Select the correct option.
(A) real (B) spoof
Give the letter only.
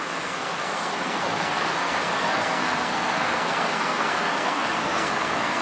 B